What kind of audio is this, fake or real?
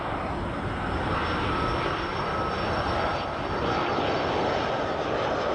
real